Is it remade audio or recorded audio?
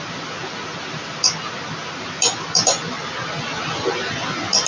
recorded